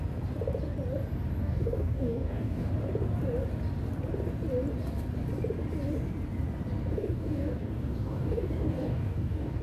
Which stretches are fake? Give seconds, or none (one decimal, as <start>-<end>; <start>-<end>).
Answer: 1.4-2.7; 6.9-9.6